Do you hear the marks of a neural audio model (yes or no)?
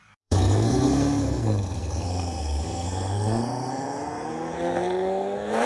yes